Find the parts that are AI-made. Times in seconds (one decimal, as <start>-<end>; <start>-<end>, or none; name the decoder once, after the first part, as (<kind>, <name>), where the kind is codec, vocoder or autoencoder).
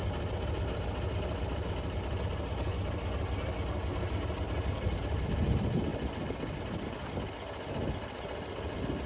5.9-6.6 (vocoder, BigVGAN v2)